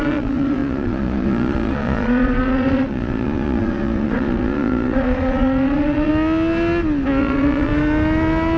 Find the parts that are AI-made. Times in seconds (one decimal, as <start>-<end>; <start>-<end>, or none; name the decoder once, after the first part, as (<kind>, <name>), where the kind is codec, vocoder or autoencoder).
0.0-6.1 (vocoder, Vocos); 7.2-7.7